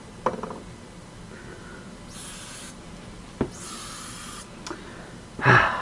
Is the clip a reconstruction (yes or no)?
no